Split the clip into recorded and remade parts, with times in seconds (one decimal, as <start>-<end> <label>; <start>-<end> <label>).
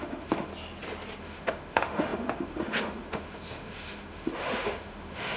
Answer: 0.0-0.5 remade; 0.5-1.2 recorded; 1.2-5.4 remade